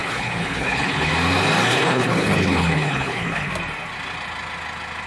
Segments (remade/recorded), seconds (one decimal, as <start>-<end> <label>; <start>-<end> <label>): 0.0-1.1 remade; 1.1-1.7 recorded; 1.7-3.5 remade; 3.5-5.1 recorded